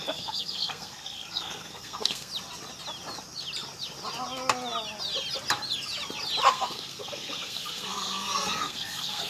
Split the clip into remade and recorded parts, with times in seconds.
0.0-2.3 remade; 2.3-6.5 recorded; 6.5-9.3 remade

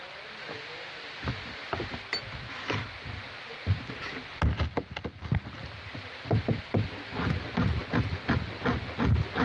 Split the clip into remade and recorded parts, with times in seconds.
0.0-9.4 recorded